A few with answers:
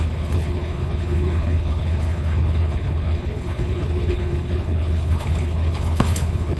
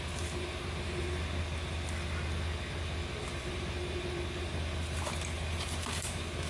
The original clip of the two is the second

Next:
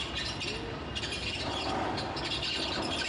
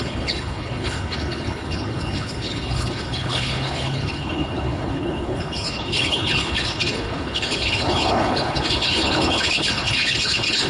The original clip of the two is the first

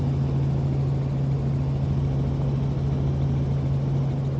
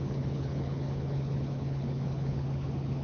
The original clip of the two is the first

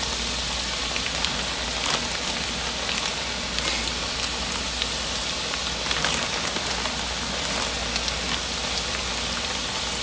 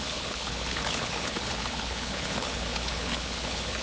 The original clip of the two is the first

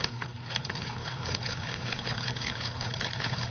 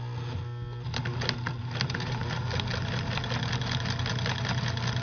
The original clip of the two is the second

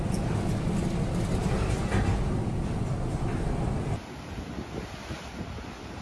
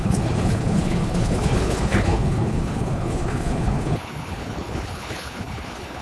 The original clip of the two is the first